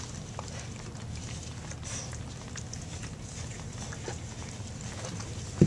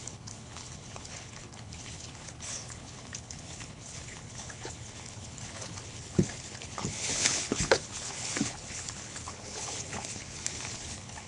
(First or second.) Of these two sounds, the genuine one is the first